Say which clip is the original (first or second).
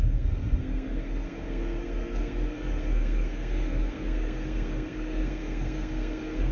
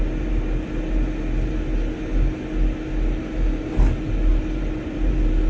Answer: second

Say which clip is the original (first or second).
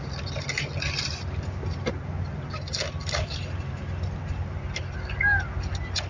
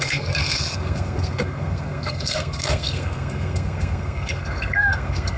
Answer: first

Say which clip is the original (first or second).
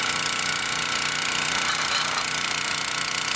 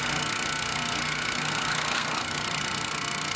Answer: first